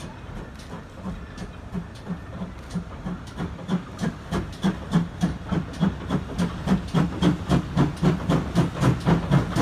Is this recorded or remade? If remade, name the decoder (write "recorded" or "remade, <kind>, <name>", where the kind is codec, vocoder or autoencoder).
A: recorded